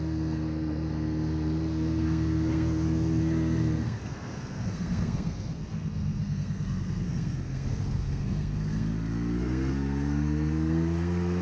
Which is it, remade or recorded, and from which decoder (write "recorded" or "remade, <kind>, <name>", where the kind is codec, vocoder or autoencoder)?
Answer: remade, codec, SNAC